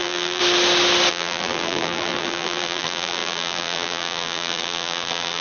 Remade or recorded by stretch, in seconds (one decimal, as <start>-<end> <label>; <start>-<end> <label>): 0.0-0.4 remade; 0.4-1.1 recorded; 1.1-5.4 remade